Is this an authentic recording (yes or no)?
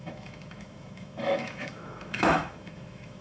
no